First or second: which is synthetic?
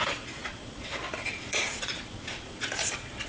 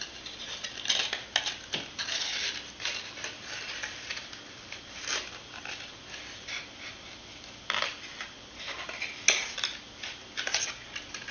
first